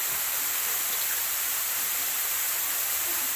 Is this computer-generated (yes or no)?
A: yes